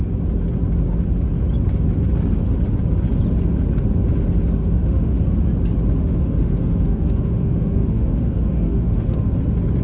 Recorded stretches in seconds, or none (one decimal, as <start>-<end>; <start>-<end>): 0.0-4.6; 5.2-6.0; 9.4-9.8